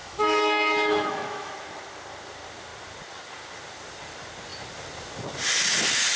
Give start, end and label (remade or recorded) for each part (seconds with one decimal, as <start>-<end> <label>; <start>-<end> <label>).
0.0-1.5 remade; 1.5-6.2 recorded